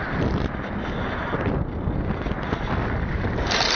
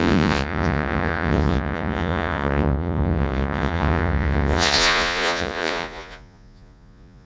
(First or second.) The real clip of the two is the first